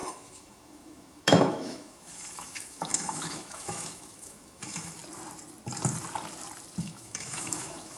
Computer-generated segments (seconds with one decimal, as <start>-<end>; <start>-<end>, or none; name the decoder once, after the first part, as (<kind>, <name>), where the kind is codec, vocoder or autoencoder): 0.0-5.0 (autoencoder, DAC-VAE); 6.8-8.0